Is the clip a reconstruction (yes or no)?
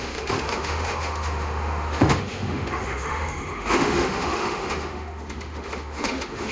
yes